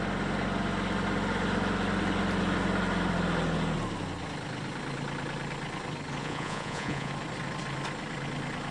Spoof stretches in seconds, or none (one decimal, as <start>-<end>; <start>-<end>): 6.2-7.1